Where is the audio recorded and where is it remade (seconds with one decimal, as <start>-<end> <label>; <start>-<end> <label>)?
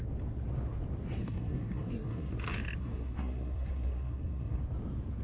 0.0-1.2 recorded; 1.2-2.3 remade; 2.3-2.8 recorded; 2.8-4.6 remade; 4.6-5.2 recorded